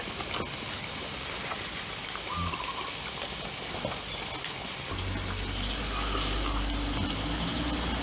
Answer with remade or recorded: recorded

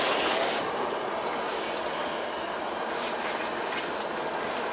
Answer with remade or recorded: recorded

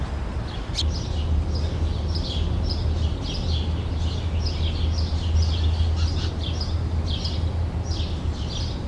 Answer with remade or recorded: recorded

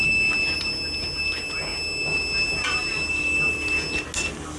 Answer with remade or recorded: recorded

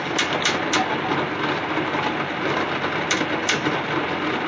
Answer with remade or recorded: recorded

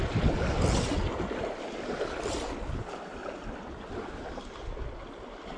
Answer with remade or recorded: recorded